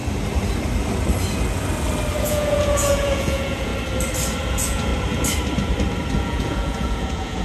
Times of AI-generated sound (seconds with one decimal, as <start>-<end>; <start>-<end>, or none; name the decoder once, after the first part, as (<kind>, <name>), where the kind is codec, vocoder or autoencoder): 2.2-3.7 (vocoder, Vocos); 4.5-4.9; 6.2-7.4